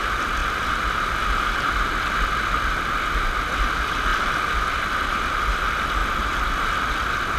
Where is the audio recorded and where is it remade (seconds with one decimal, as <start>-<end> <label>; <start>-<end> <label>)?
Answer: 0.0-4.1 recorded; 4.1-5.4 remade; 5.4-6.0 recorded; 6.0-6.7 remade; 6.7-7.4 recorded